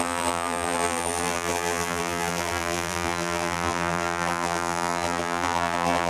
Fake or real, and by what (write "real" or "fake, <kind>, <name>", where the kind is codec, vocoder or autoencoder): fake, vocoder, BigVGAN v2